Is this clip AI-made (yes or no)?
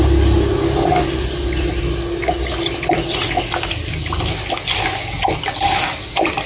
no